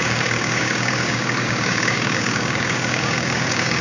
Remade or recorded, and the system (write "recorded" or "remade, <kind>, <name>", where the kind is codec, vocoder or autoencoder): remade, codec, DAC